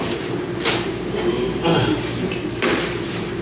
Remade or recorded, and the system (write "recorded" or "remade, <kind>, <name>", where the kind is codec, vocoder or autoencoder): remade, vocoder, BigVGAN v2